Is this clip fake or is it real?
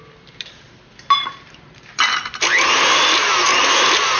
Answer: fake